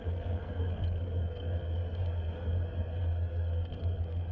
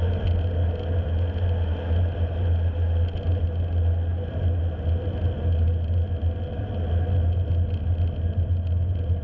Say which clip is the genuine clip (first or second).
second